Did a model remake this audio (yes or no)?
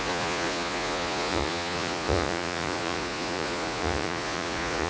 yes